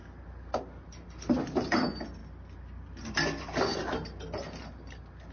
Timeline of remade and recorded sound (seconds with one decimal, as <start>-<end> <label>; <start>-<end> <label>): 0.0-5.3 recorded